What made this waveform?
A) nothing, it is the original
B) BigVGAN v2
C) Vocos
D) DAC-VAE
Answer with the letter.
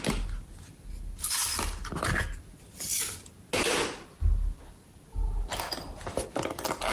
A